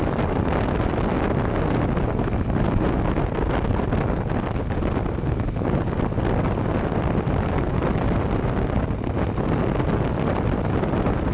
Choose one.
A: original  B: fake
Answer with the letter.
A